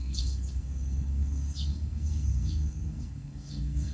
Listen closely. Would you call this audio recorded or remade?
remade